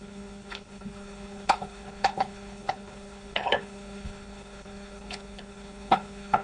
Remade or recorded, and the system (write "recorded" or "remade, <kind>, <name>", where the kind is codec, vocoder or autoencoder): remade, codec, HILCodec